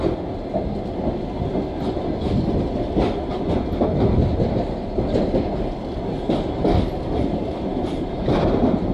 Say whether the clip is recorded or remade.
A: recorded